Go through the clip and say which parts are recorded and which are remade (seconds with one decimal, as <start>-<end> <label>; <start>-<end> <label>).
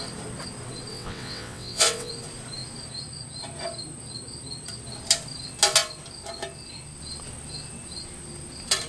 0.0-0.9 recorded; 0.9-2.1 remade; 2.1-8.9 recorded